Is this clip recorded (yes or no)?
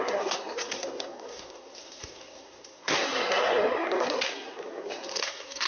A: no